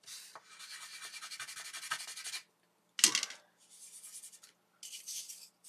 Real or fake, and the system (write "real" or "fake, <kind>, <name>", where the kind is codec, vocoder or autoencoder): real